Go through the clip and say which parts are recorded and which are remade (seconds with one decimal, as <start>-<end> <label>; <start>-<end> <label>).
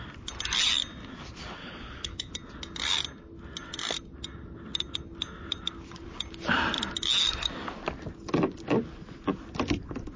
0.0-1.6 recorded; 1.6-2.3 remade; 2.3-10.2 recorded